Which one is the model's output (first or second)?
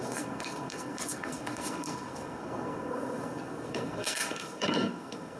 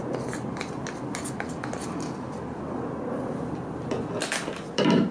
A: first